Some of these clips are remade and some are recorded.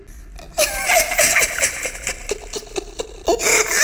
recorded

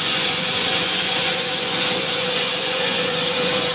remade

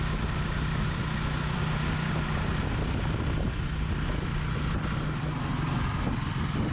recorded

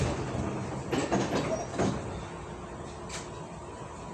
recorded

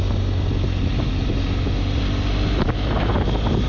recorded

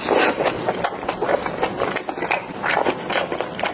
recorded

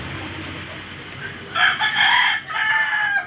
recorded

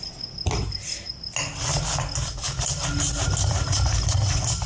recorded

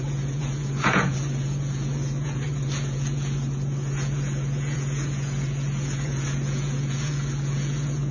remade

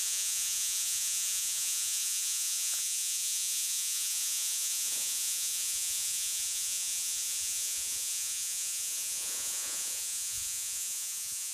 remade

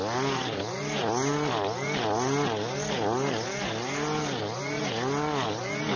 recorded